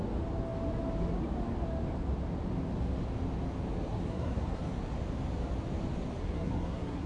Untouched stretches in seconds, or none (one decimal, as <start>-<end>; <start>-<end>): 0.0-3.9; 4.6-6.2